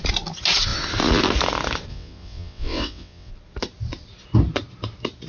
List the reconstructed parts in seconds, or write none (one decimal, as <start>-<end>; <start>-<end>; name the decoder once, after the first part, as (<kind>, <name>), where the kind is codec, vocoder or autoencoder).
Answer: 1.9-3.3 (vocoder, WaveNeXt)